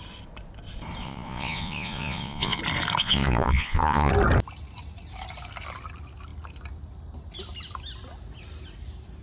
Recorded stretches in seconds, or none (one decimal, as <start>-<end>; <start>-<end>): 0.0-1.0; 2.6-3.0; 4.1-9.2